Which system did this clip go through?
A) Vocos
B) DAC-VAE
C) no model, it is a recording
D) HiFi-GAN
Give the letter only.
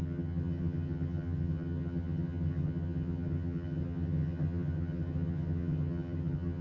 D